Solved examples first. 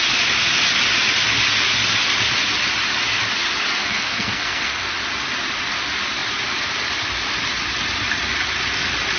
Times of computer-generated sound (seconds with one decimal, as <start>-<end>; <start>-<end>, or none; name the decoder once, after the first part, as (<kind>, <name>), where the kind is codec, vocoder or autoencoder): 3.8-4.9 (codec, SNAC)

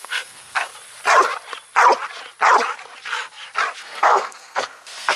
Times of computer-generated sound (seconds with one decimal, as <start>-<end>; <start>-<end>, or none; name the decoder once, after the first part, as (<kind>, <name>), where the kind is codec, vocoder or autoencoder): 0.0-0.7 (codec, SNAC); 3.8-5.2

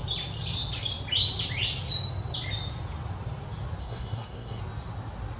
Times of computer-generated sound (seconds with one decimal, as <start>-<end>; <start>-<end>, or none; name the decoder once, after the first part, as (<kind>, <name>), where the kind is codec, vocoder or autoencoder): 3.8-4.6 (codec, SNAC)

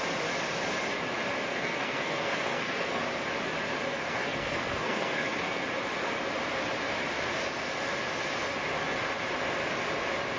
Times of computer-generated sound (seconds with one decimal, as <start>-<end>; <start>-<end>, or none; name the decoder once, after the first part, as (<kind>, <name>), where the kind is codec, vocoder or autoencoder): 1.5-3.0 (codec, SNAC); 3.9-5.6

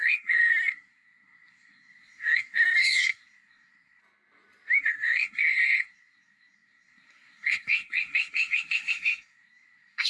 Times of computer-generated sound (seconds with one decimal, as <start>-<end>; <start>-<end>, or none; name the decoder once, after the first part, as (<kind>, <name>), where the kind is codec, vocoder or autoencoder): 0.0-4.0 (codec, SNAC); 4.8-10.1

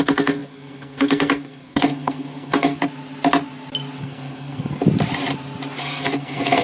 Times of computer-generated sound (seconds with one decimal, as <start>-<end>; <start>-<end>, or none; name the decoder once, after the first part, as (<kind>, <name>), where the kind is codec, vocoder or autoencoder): 0.0-2.8 (codec, SNAC); 4.0-4.8; 5.8-6.6